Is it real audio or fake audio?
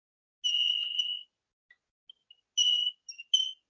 real